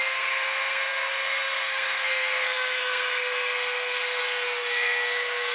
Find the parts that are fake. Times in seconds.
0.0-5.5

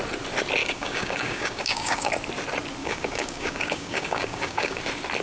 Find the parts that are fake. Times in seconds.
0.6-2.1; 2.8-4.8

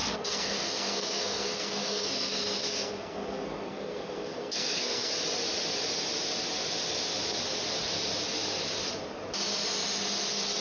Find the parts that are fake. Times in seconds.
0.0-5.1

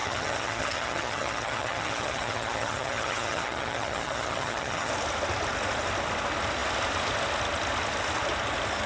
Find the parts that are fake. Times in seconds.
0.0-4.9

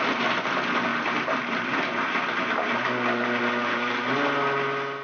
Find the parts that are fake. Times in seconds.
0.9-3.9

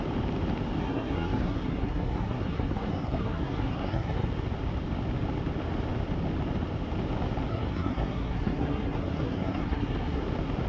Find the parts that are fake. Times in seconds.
0.8-4.3; 7.5-10.2

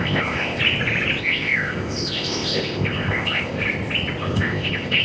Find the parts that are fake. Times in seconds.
0.0-0.6; 1.2-3.6; 4.2-5.0